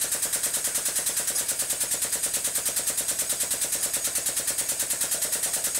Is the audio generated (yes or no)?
no